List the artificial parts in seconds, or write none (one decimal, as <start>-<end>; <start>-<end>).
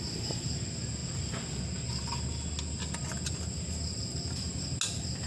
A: none